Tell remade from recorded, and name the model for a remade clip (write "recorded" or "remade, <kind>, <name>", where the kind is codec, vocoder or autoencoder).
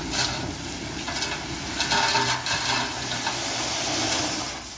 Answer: recorded